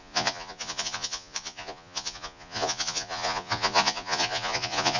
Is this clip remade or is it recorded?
remade